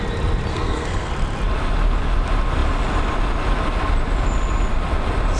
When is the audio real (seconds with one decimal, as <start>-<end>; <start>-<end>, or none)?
0.0-0.5; 1.1-5.4